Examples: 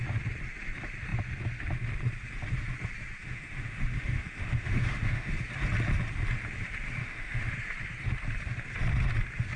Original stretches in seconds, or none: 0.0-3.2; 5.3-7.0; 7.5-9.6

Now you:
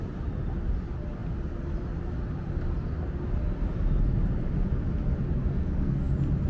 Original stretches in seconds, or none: 0.0-5.5; 6.1-6.5

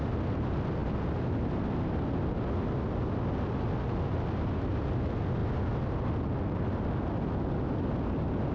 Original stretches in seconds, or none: 0.0-8.5

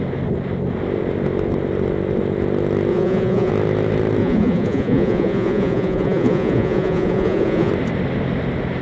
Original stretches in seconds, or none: 0.0-2.9; 3.5-4.2; 7.7-8.8

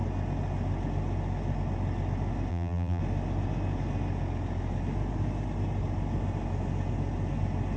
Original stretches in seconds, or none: 0.0-2.5; 3.0-7.8